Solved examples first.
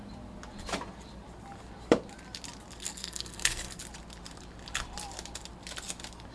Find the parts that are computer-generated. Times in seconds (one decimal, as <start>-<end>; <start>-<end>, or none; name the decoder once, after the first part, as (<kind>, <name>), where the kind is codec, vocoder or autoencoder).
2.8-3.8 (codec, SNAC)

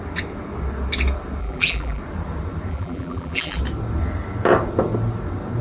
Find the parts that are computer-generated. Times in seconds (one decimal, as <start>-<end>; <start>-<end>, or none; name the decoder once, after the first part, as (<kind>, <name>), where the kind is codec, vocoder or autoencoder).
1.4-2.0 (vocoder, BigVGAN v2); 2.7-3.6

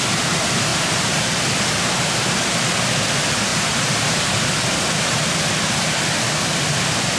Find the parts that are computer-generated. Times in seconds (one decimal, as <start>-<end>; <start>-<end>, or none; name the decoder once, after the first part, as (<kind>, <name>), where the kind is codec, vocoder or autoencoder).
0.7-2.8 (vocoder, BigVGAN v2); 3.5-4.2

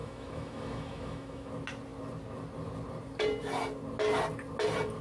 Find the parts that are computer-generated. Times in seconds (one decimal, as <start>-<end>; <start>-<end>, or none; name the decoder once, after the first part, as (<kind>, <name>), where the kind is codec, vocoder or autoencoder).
0.0-1.5 (autoencoder, DAC-VAE)

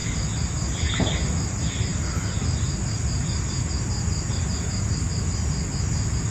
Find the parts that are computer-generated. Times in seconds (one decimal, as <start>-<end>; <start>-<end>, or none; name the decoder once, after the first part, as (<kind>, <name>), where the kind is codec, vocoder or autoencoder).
none

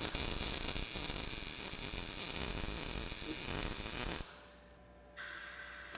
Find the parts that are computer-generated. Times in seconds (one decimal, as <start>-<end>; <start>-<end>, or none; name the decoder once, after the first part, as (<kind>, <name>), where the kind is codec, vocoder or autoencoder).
none